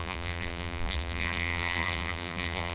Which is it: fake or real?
fake